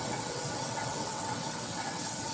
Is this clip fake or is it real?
fake